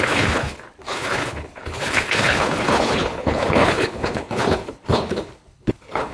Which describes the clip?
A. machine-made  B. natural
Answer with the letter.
A